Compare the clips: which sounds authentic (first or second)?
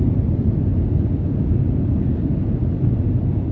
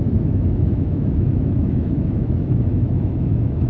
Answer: first